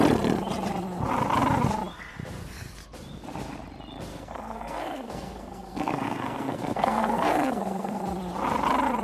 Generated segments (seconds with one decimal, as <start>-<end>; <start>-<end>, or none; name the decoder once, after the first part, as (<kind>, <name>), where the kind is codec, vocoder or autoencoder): 4.1-8.0 (codec, SNAC)